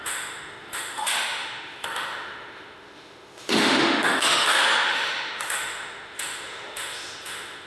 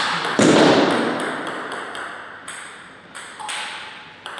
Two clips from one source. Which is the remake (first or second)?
first